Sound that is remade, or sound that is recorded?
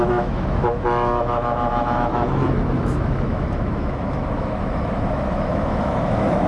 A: remade